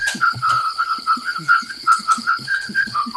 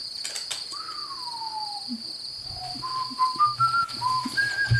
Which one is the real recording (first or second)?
second